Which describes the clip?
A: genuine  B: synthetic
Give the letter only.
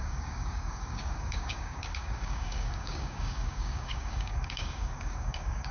B